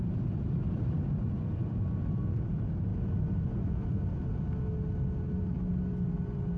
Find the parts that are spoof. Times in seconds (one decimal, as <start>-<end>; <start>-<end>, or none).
none

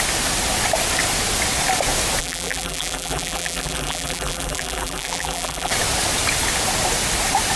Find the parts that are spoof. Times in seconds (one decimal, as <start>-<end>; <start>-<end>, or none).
2.2-5.7